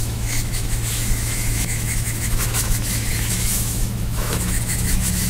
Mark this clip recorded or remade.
remade